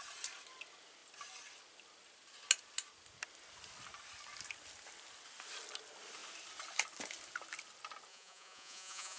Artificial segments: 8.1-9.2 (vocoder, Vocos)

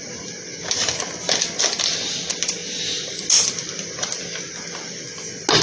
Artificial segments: none

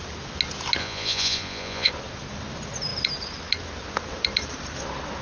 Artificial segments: 0.8-1.9 (vocoder, Vocos)

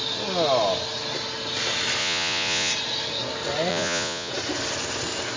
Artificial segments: 2.0-2.7 (vocoder, Vocos); 3.7-4.3